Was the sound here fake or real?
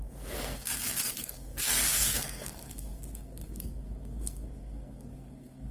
fake